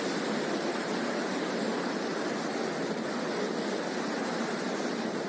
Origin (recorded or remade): recorded